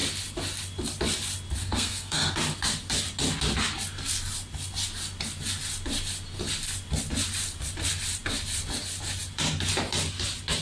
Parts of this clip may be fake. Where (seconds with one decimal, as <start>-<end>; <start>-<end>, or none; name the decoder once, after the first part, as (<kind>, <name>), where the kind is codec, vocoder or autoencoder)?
1.6-2.4 (codec, SNAC)